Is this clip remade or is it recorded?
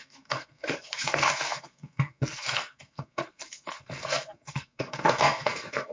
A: remade